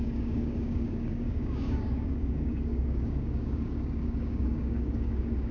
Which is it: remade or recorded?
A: remade